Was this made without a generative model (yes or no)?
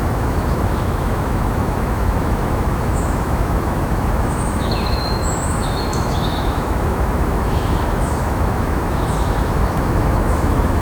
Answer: no